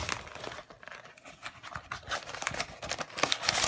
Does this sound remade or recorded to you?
recorded